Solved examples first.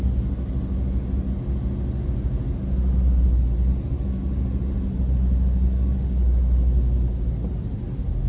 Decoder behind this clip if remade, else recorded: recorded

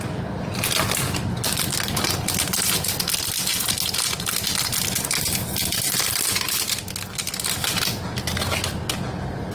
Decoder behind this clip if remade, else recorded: recorded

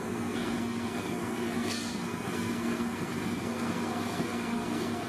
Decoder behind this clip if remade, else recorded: remade, codec, SNAC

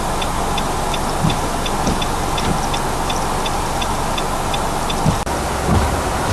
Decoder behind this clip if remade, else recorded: recorded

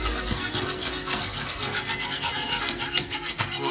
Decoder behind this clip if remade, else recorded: remade, codec, SNAC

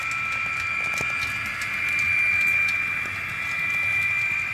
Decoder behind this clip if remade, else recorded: recorded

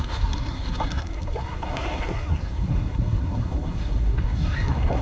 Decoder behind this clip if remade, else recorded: remade, codec, SNAC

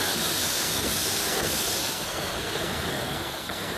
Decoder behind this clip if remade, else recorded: remade, codec, SNAC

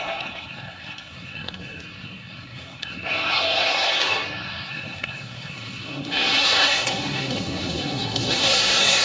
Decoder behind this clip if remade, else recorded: remade, codec, SNAC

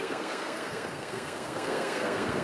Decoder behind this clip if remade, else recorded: remade, codec, SNAC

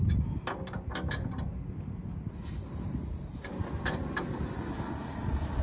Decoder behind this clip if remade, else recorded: recorded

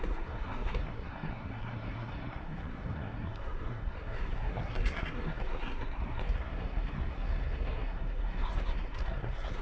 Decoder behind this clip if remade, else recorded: remade, codec, SNAC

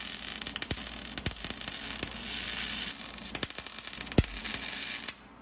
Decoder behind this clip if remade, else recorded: recorded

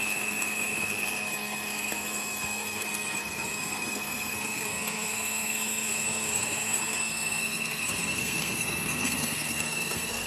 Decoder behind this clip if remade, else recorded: remade, codec, SNAC